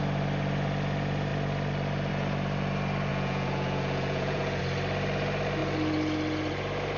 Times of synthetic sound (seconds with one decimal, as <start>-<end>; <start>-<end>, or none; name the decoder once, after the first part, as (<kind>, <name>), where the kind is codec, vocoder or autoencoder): 3.1-4.6 (vocoder, Vocos)